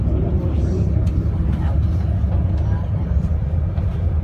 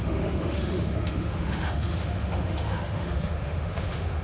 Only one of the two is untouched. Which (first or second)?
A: first